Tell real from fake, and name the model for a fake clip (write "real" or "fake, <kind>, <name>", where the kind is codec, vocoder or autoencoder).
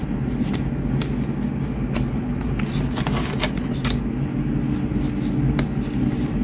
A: real